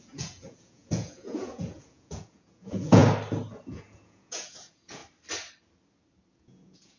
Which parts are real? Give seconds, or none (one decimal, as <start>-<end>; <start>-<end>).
3.0-3.7; 5.0-6.3